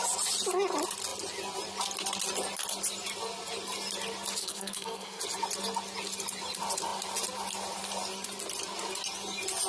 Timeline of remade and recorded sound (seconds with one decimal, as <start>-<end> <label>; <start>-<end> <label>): 0.0-4.4 recorded; 4.4-5.2 remade; 5.2-9.7 recorded